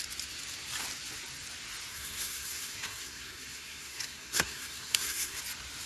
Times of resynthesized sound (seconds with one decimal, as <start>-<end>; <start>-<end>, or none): 1.9-5.4